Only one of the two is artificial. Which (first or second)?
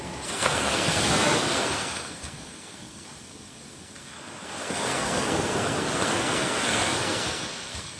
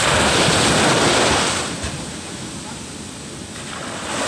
first